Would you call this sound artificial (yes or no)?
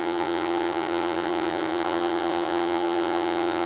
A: yes